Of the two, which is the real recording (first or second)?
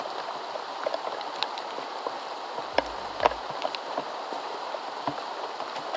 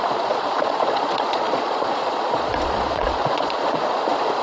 first